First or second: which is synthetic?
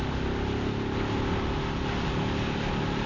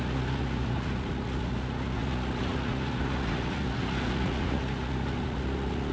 second